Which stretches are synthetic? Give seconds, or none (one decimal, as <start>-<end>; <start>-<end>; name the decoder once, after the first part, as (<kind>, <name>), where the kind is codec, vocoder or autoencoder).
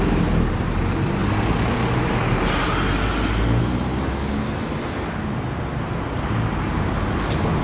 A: none